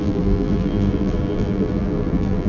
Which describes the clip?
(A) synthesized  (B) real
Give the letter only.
A